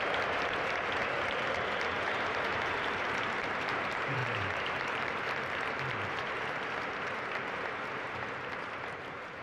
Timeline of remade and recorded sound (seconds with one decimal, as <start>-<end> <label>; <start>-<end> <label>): 0.0-9.4 remade